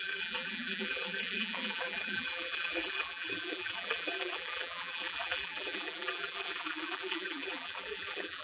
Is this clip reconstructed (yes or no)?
yes